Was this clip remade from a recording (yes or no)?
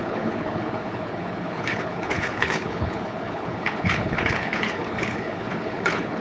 yes